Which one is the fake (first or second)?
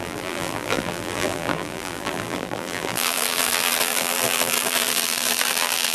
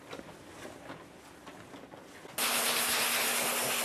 first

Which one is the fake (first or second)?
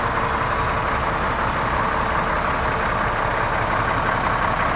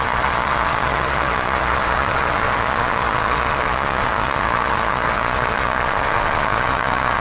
second